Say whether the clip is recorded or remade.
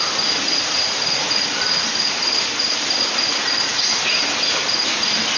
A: recorded